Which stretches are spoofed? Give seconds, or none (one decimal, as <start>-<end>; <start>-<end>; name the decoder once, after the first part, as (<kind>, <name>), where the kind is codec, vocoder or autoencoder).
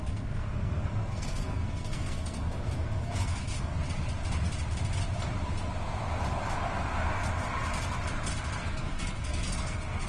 0.0-3.7 (codec, SNAC); 8.6-10.1